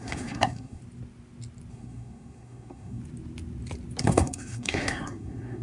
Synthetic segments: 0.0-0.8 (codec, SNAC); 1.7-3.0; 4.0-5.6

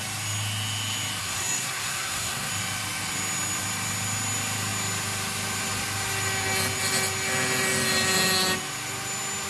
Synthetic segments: 1.2-2.5 (codec, SNAC)

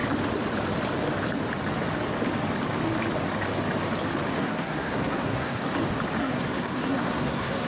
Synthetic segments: 4.4-5.7 (codec, SNAC); 6.2-7.7

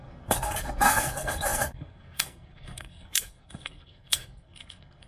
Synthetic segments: 0.0-5.1 (codec, SNAC)

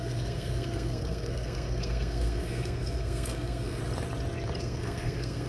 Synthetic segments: 0.0-3.8 (codec, SNAC); 4.6-5.5

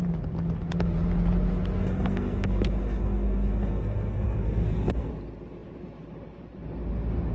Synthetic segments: 1.8-5.1 (codec, SNAC)